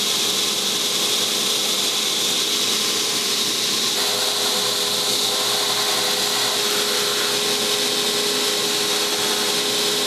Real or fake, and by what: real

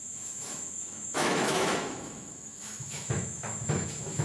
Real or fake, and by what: fake, autoencoder, DAC-VAE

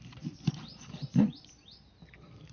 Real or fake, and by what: real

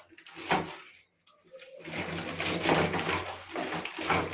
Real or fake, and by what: real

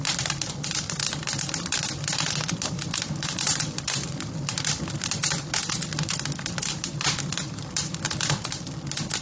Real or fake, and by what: fake, vocoder, BigVGAN v2